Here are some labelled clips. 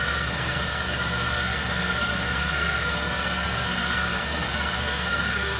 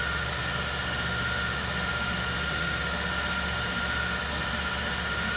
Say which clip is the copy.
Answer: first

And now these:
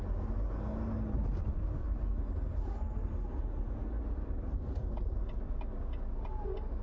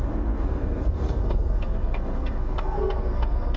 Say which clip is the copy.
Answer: second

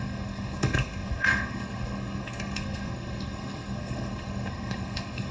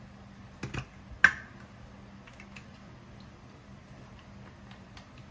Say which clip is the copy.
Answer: first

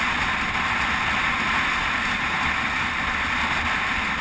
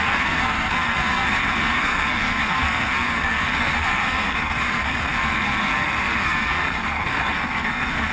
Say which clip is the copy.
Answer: second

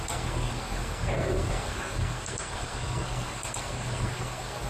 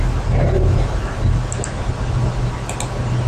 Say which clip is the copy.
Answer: first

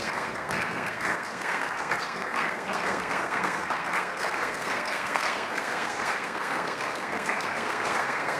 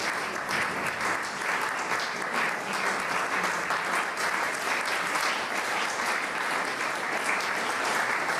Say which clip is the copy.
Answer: first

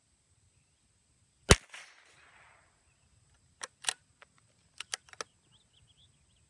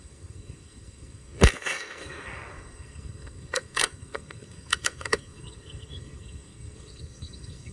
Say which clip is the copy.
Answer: second